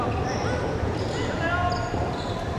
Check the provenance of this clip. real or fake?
real